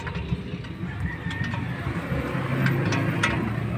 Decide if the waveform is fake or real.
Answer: real